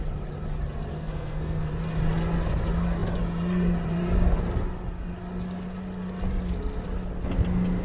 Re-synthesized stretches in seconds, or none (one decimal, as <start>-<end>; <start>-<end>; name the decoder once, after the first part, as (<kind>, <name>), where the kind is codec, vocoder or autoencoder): 0.9-1.7 (codec, SNAC)